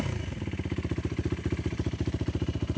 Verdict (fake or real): real